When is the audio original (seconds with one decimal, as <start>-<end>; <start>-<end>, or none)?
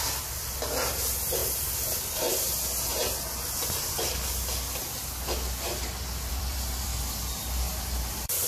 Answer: 1.4-6.3; 6.9-8.1